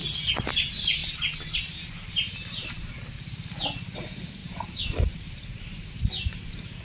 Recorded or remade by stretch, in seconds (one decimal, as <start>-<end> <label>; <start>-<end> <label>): 0.0-4.4 recorded; 4.4-6.8 remade